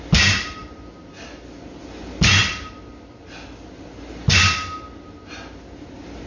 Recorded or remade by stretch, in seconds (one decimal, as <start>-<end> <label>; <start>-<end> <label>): 0.0-6.3 recorded